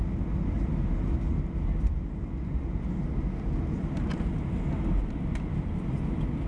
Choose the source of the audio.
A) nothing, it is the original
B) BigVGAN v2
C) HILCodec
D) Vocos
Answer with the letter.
A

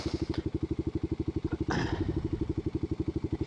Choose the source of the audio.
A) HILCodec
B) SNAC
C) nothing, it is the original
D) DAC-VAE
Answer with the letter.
C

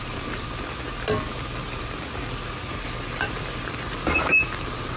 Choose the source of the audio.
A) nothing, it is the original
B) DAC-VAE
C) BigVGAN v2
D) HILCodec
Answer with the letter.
A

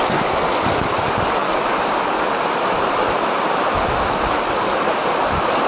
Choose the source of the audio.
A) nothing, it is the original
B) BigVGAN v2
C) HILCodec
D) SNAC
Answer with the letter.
A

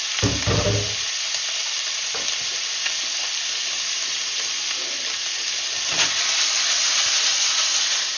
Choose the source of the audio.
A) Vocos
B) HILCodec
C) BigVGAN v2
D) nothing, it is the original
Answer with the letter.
D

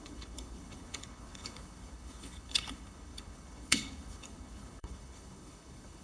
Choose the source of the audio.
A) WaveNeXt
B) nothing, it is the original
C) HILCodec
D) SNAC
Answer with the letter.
C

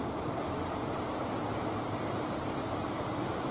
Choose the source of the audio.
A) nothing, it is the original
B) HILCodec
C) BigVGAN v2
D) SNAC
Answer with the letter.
A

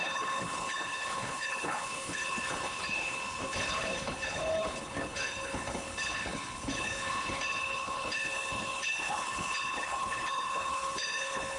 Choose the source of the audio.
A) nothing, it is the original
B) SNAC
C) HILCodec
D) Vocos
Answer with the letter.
C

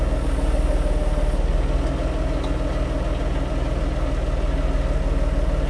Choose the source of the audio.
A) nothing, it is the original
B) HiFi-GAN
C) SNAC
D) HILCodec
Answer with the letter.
A